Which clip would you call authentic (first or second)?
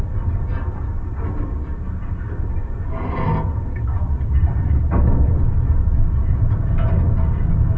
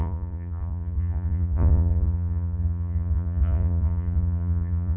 first